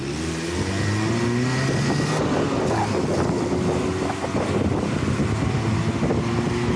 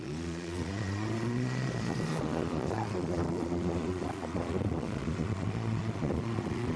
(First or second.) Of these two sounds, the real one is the first